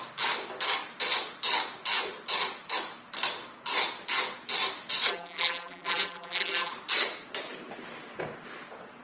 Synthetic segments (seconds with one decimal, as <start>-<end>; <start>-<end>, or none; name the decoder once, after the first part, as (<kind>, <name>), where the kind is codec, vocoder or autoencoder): 5.1-6.7 (vocoder, BigVGAN v2)

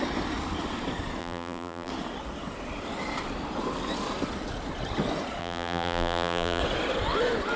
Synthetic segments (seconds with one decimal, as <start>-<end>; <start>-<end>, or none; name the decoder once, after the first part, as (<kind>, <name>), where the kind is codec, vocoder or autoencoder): 1.2-1.9 (vocoder, BigVGAN v2); 5.4-6.6

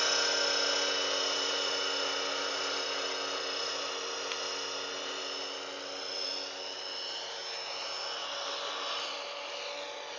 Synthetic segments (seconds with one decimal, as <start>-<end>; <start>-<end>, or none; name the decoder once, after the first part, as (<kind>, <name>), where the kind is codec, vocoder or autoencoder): none

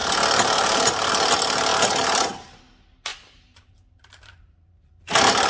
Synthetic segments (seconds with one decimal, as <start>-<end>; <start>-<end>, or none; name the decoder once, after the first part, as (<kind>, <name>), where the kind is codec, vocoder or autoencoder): 0.0-1.1 (vocoder, BigVGAN v2); 1.7-2.6; 3.1-5.5

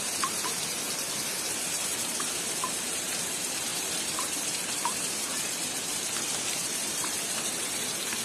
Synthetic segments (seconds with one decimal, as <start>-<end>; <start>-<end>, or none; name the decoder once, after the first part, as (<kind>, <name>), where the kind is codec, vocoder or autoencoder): 0.0-8.2 (vocoder, BigVGAN v2)

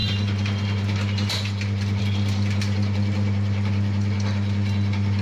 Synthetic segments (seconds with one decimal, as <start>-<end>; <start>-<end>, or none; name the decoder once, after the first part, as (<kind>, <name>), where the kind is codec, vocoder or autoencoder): 0.0-5.2 (vocoder, BigVGAN v2)

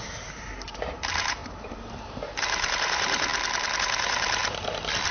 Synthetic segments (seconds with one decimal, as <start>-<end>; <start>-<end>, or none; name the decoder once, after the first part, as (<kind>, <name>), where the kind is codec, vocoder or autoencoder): 0.0-3.3 (vocoder, BigVGAN v2); 3.8-4.4

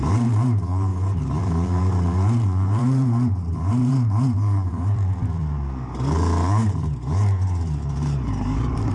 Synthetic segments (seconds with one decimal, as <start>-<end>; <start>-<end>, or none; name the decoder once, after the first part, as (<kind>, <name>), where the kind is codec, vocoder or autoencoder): 0.0-8.9 (vocoder, BigVGAN v2)